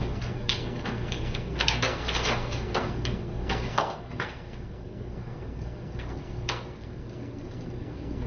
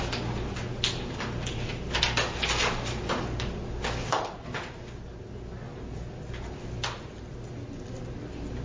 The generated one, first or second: first